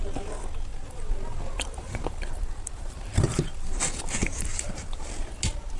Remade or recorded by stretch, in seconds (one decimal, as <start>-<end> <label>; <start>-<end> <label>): 0.0-0.7 recorded; 0.7-3.8 remade; 3.8-4.2 recorded; 4.2-5.2 remade; 5.2-5.8 recorded

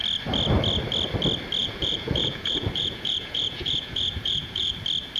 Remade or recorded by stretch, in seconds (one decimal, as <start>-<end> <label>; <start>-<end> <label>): 0.0-1.6 recorded; 1.6-4.7 remade; 4.7-5.2 recorded

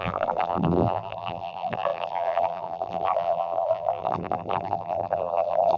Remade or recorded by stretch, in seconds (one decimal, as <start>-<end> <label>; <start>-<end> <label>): 0.0-5.8 remade